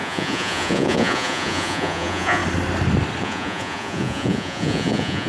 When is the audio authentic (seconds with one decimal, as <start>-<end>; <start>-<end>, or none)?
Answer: 2.4-3.2